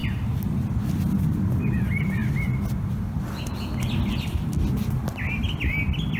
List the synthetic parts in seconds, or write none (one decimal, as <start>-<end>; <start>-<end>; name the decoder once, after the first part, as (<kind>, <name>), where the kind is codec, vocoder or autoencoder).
none